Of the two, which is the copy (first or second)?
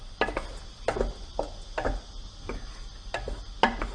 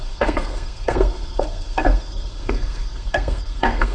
second